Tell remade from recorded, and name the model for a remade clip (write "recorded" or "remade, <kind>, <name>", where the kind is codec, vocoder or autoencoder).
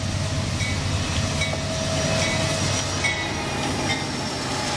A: recorded